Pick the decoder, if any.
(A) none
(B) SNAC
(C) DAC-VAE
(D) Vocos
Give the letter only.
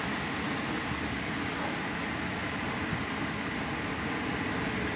A